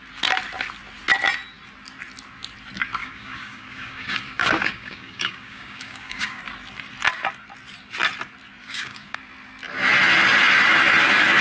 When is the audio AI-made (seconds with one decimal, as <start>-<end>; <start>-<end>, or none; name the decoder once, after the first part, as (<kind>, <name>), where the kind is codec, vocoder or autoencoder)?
3.0-6.4 (codec, DAC); 8.6-9.2